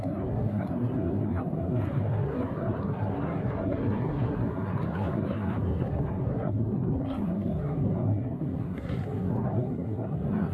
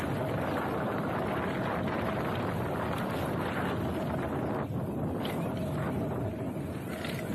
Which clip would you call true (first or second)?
second